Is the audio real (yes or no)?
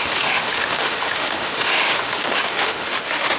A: no